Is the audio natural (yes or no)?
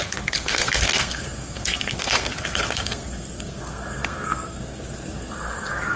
no